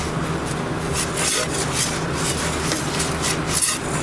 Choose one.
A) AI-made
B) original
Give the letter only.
B